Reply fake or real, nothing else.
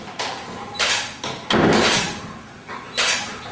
real